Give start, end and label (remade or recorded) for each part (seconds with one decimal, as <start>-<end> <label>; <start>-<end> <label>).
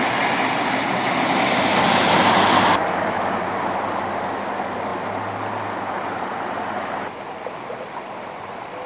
0.0-8.9 recorded